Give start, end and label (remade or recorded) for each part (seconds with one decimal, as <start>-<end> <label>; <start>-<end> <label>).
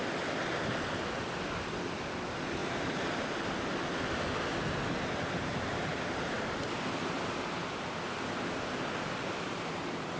0.0-10.2 recorded